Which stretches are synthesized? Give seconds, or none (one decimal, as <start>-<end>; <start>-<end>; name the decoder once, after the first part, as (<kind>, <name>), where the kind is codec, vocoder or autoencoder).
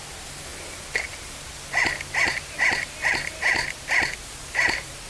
none